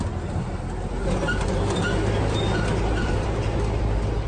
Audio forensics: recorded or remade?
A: recorded